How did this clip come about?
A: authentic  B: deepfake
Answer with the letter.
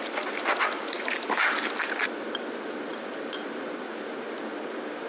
A